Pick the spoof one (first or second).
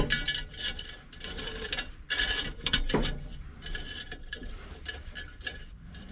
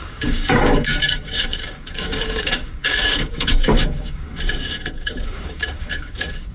second